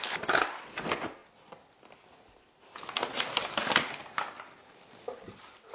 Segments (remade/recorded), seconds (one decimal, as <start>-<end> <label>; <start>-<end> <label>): 0.0-1.2 remade; 1.2-3.4 recorded; 3.4-5.7 remade